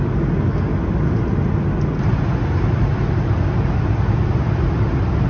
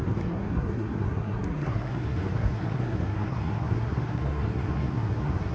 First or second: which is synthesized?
second